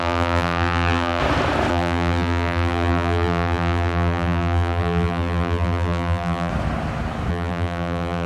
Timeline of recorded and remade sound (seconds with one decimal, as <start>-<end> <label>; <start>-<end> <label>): 0.0-1.2 remade; 1.2-1.7 recorded; 1.7-6.5 remade; 6.5-7.3 recorded; 7.3-8.3 remade